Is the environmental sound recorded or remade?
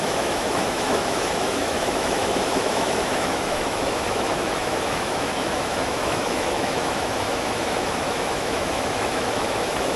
remade